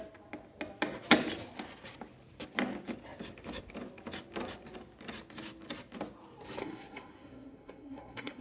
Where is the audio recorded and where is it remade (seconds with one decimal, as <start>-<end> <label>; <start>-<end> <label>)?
0.0-6.6 recorded; 6.6-8.4 remade